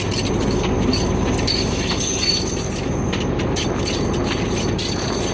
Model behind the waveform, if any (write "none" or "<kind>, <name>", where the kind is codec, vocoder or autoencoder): none